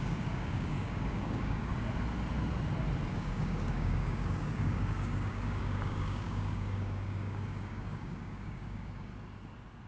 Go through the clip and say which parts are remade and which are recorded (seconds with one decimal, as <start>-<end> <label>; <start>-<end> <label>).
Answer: 0.0-1.7 remade; 1.7-3.1 recorded; 3.1-9.1 remade; 9.1-9.9 recorded